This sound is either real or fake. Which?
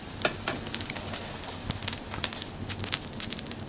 real